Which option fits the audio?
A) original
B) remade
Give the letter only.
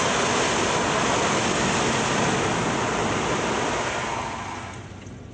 A